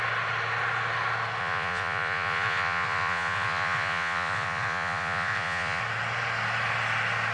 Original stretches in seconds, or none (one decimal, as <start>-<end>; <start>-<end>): 0.0-1.4; 5.8-7.3